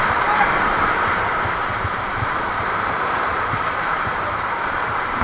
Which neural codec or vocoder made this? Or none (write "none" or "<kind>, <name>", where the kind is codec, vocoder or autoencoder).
vocoder, BigVGAN v2